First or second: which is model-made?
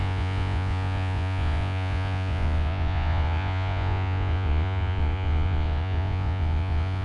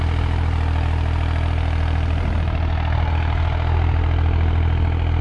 first